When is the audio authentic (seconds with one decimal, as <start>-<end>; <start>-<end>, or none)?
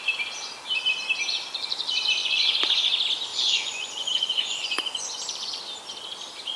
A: 0.0-2.2; 2.9-3.3; 5.6-6.6